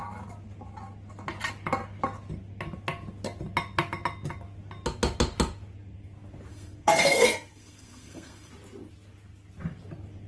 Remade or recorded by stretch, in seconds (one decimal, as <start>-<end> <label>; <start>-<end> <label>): 0.0-6.5 recorded; 6.5-8.5 remade; 8.5-10.3 recorded